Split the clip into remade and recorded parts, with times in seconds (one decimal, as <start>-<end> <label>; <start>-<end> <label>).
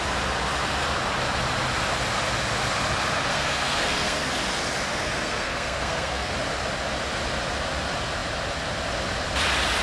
0.0-3.3 recorded; 3.3-4.3 remade; 4.3-4.9 recorded; 4.9-6.3 remade; 6.3-9.8 recorded